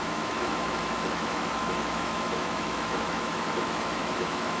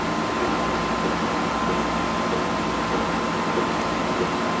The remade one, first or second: first